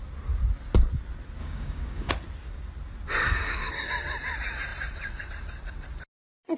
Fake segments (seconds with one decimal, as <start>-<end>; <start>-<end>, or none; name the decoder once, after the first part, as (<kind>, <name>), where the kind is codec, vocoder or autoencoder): 1.4-2.1 (codec, DAC); 3.2-3.7